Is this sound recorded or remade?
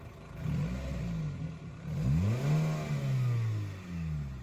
recorded